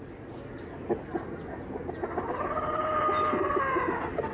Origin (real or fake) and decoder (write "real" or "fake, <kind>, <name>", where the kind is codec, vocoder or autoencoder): real